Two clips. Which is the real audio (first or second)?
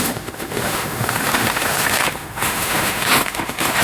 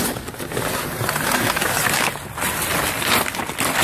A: second